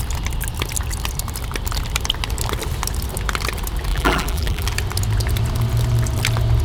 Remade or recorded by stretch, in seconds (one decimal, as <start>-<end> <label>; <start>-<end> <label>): 0.0-3.9 recorded; 3.9-4.7 remade; 4.7-6.6 recorded